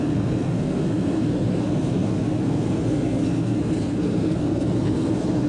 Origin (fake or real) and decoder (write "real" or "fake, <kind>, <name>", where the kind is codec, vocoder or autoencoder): fake, codec, SNAC